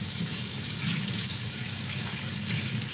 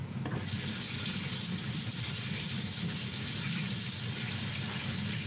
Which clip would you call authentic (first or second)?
second